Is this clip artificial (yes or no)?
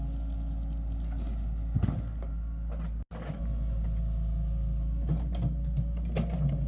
no